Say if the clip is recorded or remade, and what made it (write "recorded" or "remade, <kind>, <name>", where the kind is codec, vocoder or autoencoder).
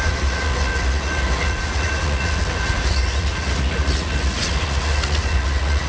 remade, vocoder, Vocos